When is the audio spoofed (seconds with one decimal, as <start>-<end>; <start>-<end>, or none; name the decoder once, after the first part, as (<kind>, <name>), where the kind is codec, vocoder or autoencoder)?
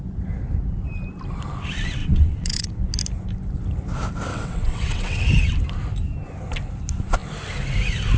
2.0-2.8 (vocoder, WaveNeXt); 4.3-5.2